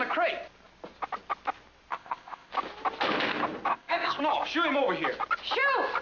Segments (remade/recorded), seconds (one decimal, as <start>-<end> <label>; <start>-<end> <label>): 0.0-1.9 recorded; 1.9-2.5 remade; 2.5-3.7 recorded; 3.7-4.2 remade; 4.2-6.0 recorded